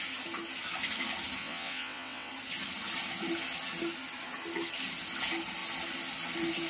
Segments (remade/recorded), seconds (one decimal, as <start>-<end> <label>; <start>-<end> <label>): 0.0-1.4 recorded; 1.4-2.3 remade; 2.3-6.7 recorded